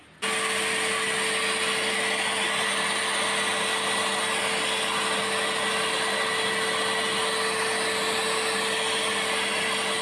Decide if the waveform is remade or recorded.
recorded